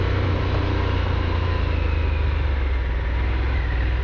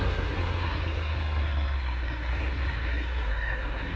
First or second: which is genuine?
first